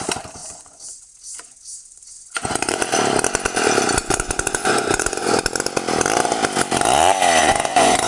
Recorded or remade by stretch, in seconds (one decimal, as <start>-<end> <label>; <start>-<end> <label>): 0.0-0.4 recorded; 0.4-2.8 remade; 2.8-4.0 recorded; 4.0-5.4 remade; 5.4-7.4 recorded; 7.4-8.1 remade